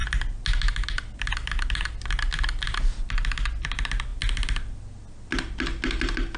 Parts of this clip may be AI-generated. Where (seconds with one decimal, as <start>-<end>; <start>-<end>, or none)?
none